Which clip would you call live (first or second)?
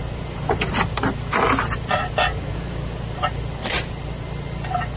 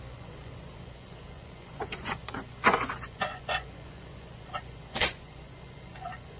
first